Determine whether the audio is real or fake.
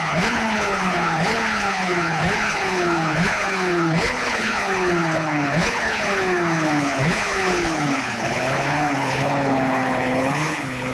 fake